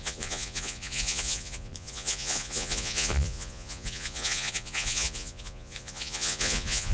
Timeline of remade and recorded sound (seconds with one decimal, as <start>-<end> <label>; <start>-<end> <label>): 0.0-6.9 remade